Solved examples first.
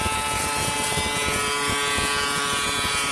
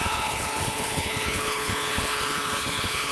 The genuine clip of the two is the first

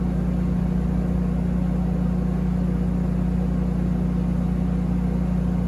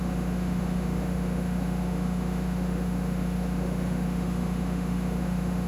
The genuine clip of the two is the first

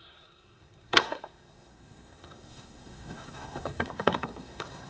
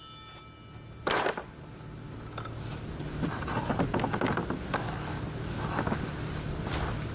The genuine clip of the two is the second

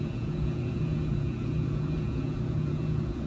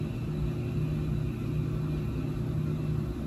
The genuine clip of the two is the second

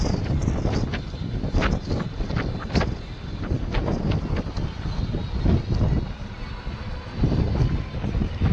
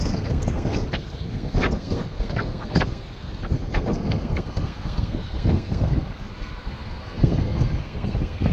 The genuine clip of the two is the first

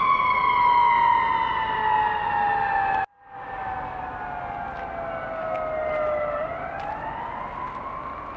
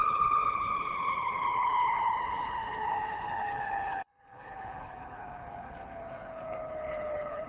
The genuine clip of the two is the first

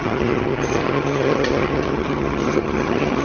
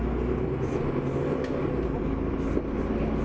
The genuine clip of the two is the second